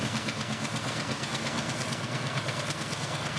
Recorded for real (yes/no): no